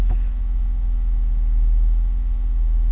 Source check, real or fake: real